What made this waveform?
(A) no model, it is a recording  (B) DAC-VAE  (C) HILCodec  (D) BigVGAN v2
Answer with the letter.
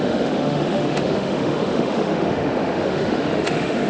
B